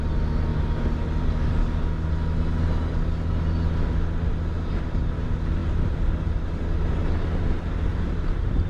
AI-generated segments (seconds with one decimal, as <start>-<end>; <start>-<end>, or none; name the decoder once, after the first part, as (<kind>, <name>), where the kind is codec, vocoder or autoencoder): 7.9-8.7 (vocoder, BigVGAN v2)